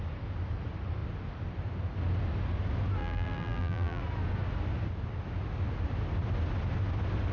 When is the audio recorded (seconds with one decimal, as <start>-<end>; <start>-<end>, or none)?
0.0-3.0; 4.0-7.3